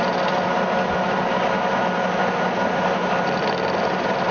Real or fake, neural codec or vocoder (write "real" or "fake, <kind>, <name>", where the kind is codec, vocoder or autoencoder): real